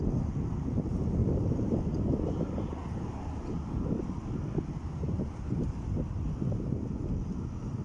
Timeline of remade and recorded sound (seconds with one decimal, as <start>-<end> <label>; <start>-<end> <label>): 0.0-1.2 recorded; 1.2-2.4 remade; 2.4-7.8 recorded